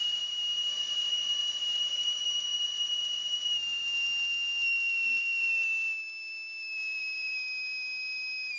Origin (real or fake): fake